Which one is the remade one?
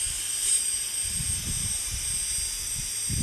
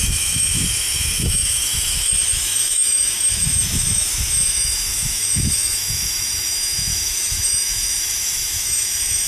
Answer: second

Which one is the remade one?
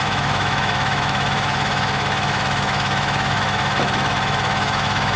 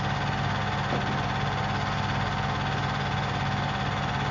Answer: first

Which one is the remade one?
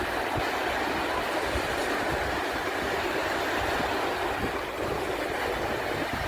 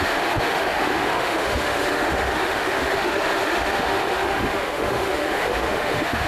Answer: second